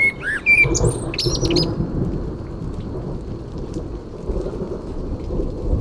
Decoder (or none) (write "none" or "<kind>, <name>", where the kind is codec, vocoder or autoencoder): none